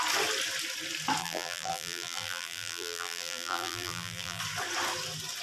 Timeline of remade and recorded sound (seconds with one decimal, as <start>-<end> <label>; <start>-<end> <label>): 0.0-1.2 recorded; 1.2-4.4 remade; 4.4-5.4 recorded